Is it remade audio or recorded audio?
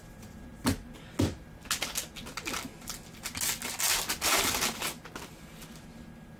recorded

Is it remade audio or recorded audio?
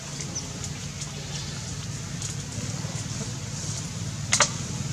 recorded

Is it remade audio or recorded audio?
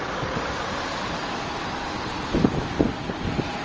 recorded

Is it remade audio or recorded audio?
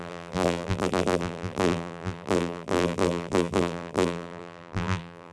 remade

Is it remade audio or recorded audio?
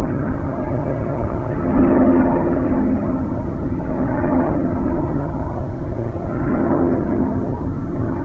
remade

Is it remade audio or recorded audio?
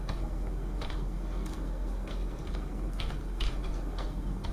remade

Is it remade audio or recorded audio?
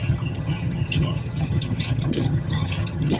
remade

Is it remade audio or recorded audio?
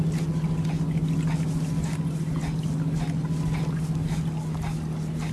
recorded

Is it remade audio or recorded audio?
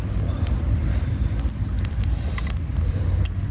remade